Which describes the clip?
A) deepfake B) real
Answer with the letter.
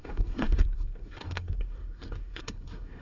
A